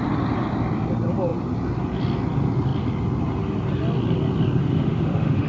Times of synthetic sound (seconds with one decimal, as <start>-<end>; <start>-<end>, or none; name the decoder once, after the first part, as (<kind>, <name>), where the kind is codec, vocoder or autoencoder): 4.6-5.5 (autoencoder, DAC-VAE)